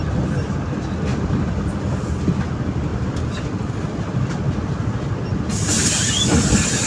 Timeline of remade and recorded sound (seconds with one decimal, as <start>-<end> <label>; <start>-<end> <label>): 0.0-1.1 recorded; 1.1-1.7 remade; 1.7-6.9 recorded